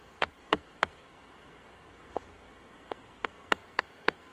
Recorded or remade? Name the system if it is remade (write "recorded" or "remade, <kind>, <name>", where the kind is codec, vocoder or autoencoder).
remade, codec, SNAC